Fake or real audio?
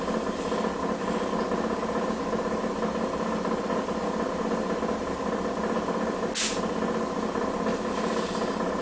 real